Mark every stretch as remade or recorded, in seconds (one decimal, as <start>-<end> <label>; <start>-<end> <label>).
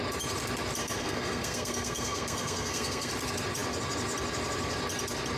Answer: 0.0-0.8 recorded; 0.8-3.1 remade; 3.1-5.4 recorded